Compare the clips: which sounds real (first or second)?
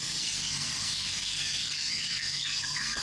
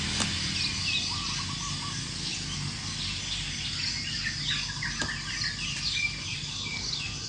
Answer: second